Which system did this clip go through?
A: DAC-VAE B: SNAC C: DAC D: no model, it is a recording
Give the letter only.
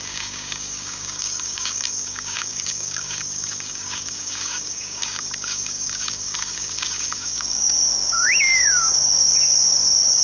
C